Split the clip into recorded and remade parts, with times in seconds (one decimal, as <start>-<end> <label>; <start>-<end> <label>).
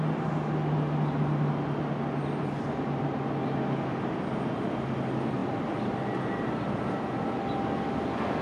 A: 0.0-8.4 recorded